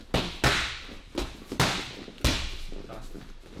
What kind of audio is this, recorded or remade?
recorded